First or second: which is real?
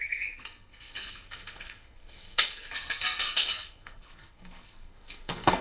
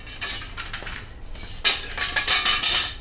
second